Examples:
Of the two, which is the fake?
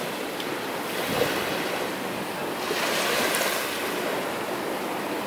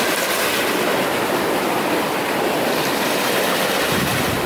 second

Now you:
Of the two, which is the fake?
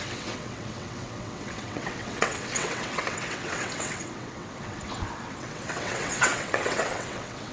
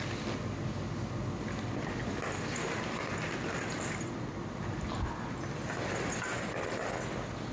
first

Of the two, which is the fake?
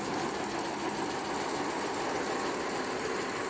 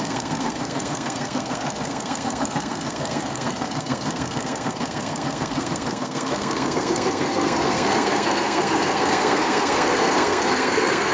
second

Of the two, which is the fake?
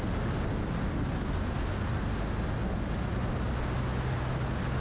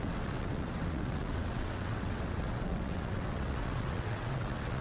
second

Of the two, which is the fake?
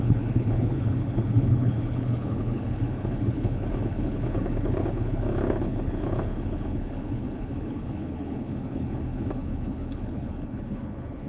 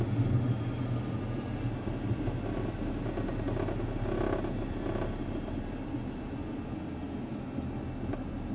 first